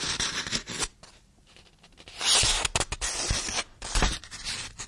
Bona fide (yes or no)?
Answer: yes